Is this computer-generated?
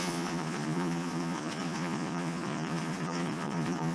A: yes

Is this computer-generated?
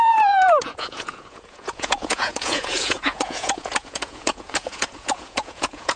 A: yes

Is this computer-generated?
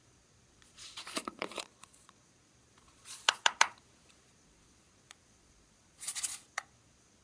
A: yes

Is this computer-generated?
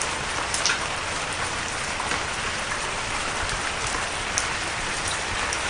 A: no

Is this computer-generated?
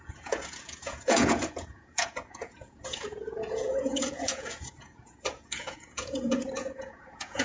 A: yes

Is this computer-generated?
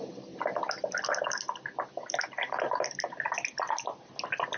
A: no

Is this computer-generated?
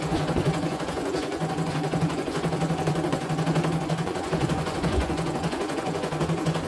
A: yes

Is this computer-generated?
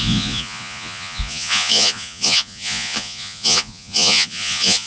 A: yes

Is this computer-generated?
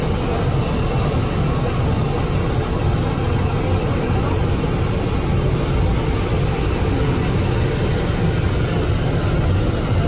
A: no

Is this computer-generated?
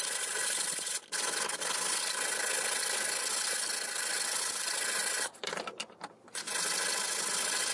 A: no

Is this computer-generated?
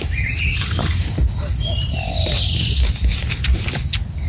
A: no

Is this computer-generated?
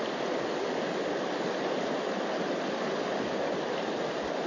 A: no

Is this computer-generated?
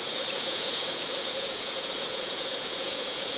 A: yes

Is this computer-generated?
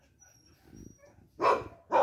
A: no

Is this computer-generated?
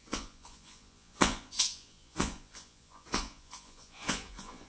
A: yes